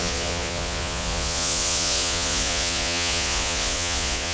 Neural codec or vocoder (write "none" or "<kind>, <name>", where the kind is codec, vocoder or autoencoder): vocoder, Vocos